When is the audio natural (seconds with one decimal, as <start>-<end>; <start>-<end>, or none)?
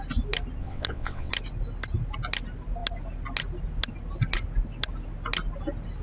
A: 0.0-0.6; 1.3-6.0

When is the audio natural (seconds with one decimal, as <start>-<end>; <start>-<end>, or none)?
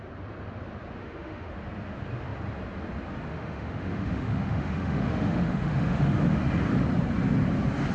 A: 0.0-1.0; 1.5-3.3; 6.2-7.9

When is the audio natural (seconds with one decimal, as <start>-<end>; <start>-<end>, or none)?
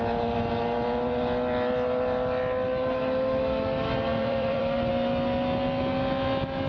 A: 0.0-4.1; 4.9-6.7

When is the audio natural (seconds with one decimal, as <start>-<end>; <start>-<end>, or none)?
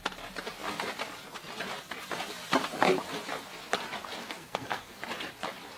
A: 0.0-4.2; 5.0-5.8